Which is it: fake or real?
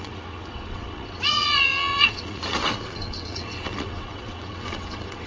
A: fake